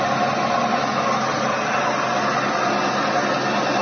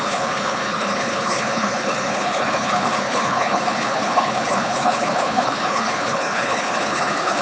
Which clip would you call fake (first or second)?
second